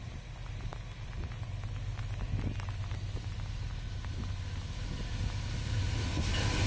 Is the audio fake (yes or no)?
no